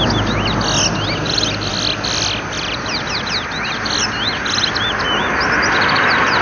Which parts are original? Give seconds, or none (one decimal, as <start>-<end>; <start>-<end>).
0.0-6.4